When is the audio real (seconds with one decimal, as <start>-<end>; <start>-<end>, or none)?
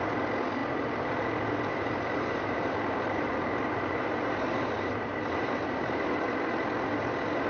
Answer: 0.0-1.7; 6.2-7.5